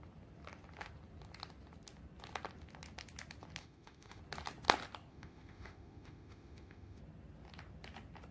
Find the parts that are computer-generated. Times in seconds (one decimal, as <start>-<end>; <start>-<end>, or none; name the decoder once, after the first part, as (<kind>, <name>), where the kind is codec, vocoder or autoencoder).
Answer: 3.6-4.2 (autoencoder, DAC-VAE); 5.1-7.0